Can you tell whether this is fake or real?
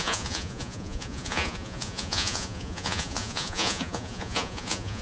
fake